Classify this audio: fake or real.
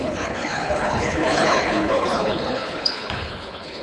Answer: fake